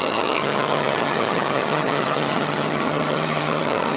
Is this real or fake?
fake